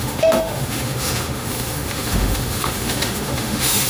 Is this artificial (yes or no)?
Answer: yes